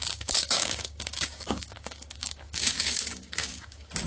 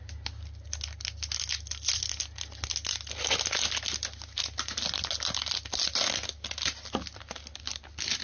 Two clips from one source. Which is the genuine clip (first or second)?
second